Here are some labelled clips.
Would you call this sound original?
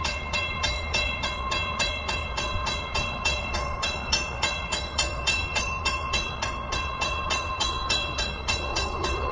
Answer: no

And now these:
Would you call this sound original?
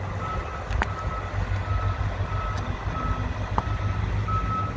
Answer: yes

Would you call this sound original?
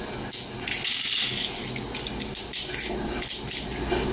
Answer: yes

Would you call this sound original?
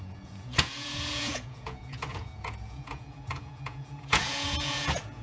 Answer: no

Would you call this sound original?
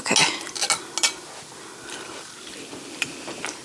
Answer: yes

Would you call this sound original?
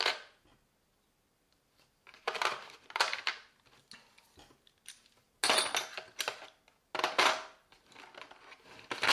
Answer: yes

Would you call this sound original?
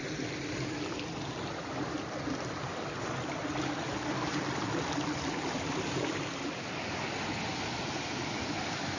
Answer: yes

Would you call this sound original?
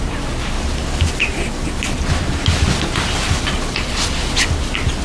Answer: yes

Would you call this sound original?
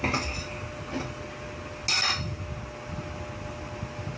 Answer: yes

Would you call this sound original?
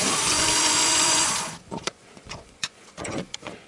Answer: no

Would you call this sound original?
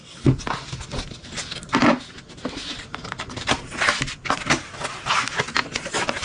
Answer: yes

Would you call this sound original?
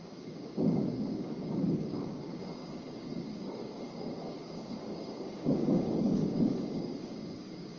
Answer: no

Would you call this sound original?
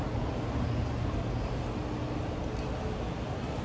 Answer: yes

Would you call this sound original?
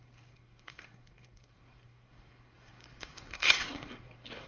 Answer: no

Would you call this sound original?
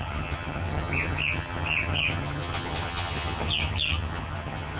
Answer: no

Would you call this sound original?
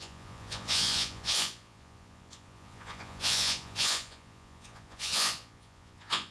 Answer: no